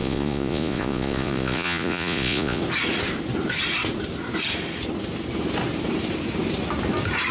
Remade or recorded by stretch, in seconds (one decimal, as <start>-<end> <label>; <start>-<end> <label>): 0.0-2.6 remade; 2.6-7.3 recorded